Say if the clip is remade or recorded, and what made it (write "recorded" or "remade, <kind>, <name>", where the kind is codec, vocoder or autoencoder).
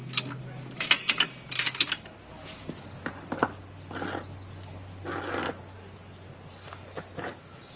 recorded